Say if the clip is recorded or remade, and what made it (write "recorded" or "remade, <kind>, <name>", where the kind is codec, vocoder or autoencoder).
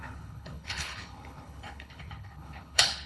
remade, codec, HILCodec